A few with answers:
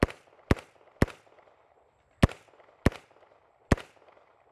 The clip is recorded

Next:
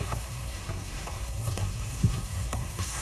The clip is remade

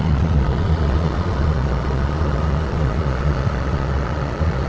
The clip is remade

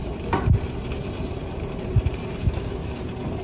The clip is remade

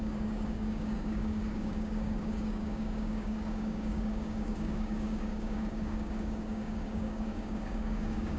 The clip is remade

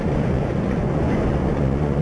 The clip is remade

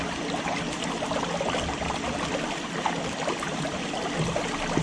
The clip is recorded